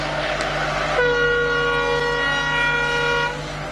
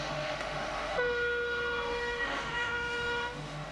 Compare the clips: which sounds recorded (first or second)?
first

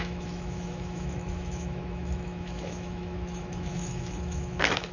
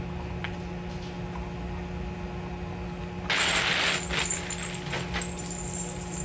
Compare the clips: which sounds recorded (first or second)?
second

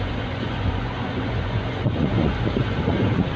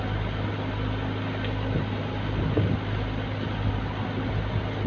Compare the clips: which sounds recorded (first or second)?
second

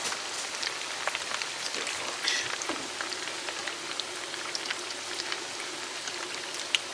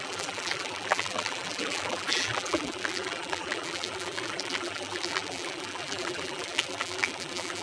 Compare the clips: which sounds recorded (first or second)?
first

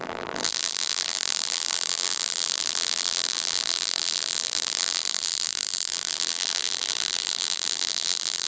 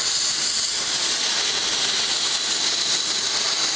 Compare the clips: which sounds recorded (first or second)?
second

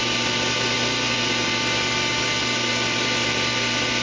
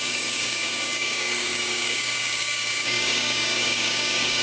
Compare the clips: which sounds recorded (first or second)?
first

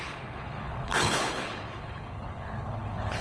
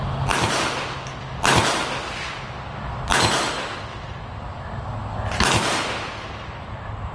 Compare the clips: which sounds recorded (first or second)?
second